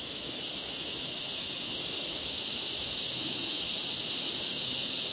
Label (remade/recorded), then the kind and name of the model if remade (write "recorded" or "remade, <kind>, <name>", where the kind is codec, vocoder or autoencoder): remade, autoencoder, DAC-VAE